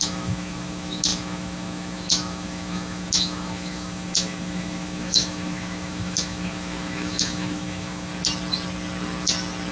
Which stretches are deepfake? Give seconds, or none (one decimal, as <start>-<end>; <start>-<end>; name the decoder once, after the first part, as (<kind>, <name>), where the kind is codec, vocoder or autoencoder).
0.0-8.1 (autoencoder, DAC-VAE)